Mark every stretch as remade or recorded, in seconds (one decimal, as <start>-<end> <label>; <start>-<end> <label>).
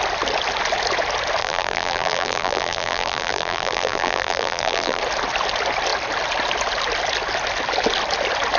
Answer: 0.0-1.4 recorded; 1.4-5.0 remade; 5.0-8.6 recorded